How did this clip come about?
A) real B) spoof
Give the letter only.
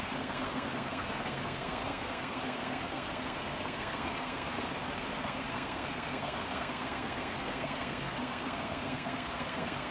B